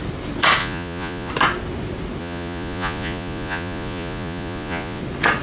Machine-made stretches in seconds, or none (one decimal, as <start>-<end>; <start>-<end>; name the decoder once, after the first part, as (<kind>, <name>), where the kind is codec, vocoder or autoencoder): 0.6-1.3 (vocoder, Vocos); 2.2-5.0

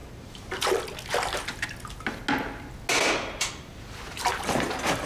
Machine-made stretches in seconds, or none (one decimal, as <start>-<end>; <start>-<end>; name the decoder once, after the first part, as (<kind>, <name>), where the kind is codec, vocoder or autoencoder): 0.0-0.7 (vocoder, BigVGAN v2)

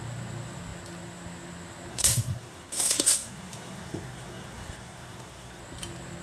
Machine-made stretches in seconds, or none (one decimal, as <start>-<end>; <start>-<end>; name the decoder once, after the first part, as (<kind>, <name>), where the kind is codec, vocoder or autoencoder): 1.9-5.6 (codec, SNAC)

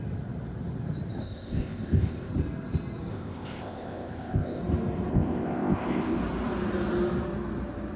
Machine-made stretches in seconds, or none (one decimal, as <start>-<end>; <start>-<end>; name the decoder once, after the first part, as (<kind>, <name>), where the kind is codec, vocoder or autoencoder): 1.2-2.3 (codec, ZipCodec); 3.1-4.6; 5.1-6.2

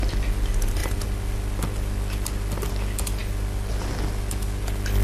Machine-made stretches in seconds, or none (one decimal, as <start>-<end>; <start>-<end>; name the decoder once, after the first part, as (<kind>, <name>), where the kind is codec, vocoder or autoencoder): none

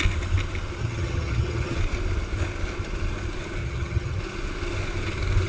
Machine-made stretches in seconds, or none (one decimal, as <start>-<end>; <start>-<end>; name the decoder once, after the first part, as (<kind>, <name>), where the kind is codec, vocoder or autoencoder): 0.8-1.8 (vocoder, HiFi-GAN); 3.6-4.2

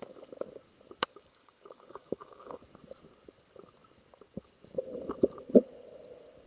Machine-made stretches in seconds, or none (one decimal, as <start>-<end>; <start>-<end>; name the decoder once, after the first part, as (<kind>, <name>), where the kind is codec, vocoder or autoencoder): 1.1-2.6 (codec, DAC)

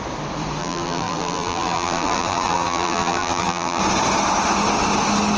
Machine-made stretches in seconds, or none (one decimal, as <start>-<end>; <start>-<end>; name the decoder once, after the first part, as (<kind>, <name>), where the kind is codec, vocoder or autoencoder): 0.6-3.8 (vocoder, BigVGAN v2)